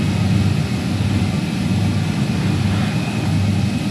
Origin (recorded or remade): recorded